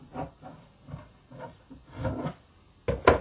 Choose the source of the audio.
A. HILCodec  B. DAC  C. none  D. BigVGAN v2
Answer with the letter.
C